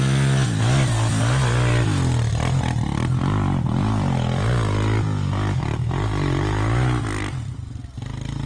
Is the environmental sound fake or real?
real